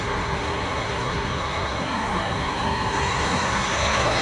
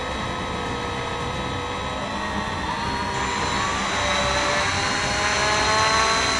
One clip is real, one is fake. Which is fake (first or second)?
first